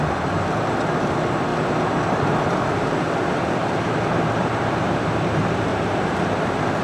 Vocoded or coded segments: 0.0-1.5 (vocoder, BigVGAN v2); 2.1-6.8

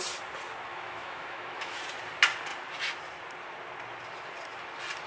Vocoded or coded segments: 0.7-1.8 (autoencoder, DAC-VAE)